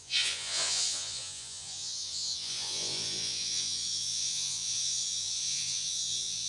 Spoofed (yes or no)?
yes